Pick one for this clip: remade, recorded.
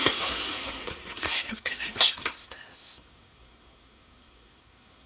remade